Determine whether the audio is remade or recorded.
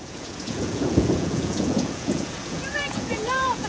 remade